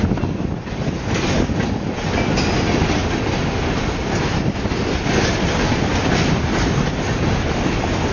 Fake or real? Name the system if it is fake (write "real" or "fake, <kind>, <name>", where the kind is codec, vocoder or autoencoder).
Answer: real